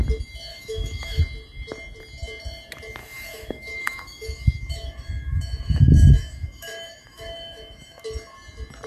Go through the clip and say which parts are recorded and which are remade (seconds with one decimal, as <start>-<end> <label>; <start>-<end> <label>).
0.0-0.5 recorded; 0.5-1.2 remade; 1.2-3.0 recorded; 3.0-8.0 remade; 8.0-8.9 recorded